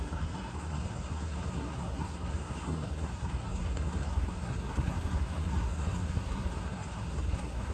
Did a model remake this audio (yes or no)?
yes